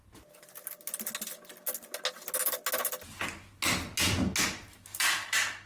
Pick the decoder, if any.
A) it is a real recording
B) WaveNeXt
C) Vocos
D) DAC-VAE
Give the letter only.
A